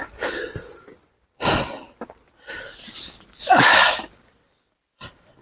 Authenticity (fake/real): real